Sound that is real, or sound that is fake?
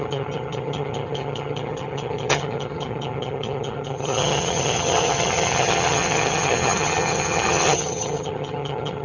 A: fake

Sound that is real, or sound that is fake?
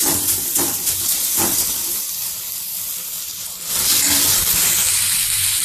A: fake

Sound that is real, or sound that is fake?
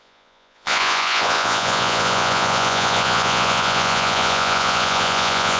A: fake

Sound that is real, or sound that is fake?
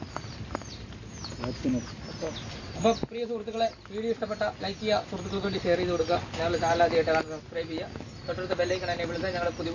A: real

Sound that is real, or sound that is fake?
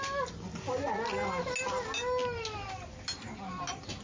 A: real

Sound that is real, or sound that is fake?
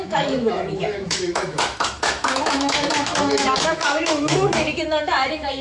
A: fake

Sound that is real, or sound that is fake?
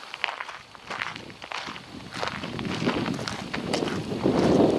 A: real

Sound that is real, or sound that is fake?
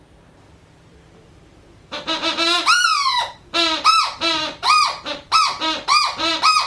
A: fake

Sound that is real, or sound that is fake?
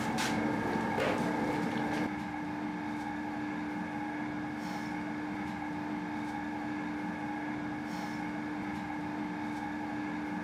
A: fake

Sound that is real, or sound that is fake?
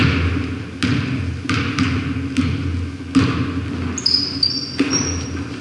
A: real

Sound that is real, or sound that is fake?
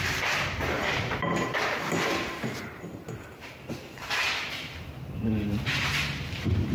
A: fake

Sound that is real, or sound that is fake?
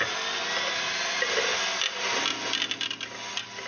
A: real